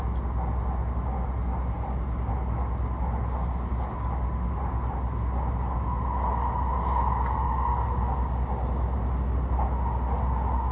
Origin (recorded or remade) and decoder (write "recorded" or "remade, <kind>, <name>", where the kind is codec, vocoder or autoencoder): recorded